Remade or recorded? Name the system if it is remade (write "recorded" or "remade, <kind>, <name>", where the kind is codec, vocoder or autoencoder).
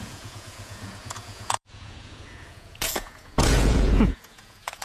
remade, vocoder, Vocos